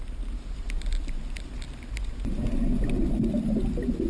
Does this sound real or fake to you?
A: real